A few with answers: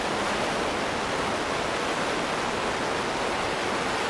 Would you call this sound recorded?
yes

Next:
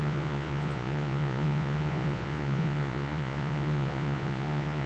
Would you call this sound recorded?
no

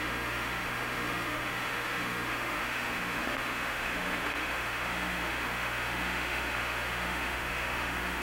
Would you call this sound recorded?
no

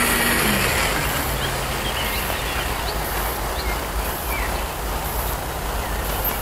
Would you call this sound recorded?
yes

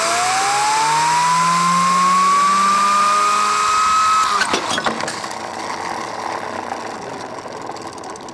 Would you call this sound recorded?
yes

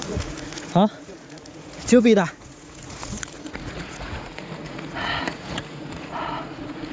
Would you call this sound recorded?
no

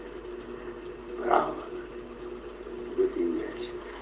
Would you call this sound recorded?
yes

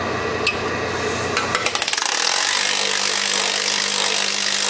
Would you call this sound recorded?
yes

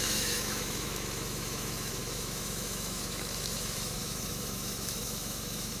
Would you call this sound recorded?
no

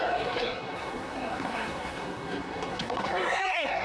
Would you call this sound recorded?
no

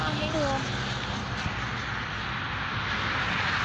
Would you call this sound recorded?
yes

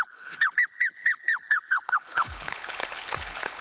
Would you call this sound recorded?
no